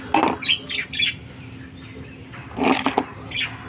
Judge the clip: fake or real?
real